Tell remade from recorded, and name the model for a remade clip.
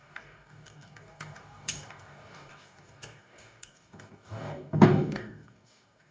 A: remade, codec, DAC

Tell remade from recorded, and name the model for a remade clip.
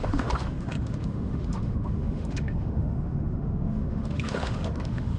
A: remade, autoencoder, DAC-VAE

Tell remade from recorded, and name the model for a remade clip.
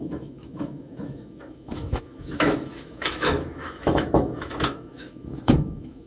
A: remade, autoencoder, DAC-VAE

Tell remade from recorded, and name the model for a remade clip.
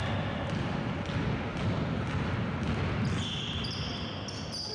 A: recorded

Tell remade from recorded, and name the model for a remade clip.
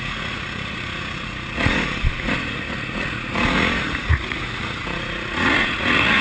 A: remade, vocoder, Vocos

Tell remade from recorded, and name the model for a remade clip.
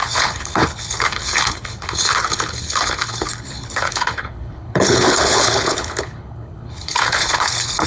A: remade, codec, HILCodec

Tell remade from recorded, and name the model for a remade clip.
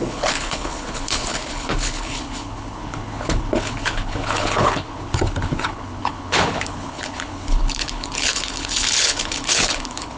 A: remade, codec, HILCodec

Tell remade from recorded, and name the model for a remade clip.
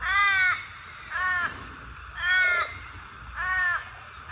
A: recorded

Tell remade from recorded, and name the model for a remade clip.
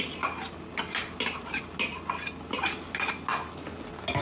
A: recorded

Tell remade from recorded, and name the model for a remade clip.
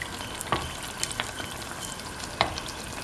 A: recorded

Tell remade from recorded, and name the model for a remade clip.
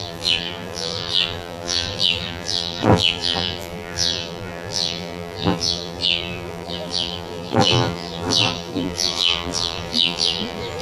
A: remade, vocoder, BigVGAN v2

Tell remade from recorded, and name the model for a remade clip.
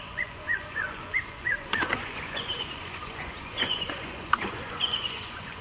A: remade, vocoder, Vocos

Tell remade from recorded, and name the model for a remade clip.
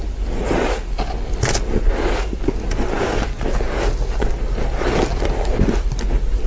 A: recorded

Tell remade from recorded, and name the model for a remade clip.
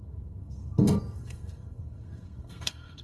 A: remade, codec, SNAC